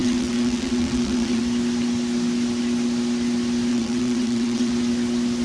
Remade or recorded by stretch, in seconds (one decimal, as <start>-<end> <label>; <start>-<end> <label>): 0.0-1.4 remade; 1.4-3.7 recorded; 3.7-4.7 remade; 4.7-5.4 recorded